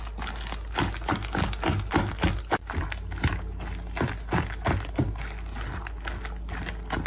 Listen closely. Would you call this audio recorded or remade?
recorded